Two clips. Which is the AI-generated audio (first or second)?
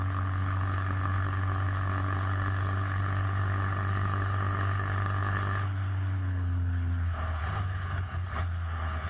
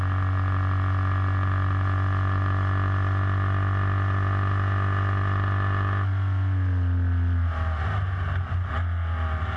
first